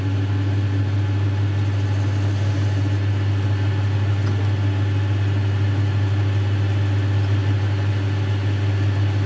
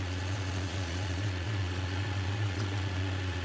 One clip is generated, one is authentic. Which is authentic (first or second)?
first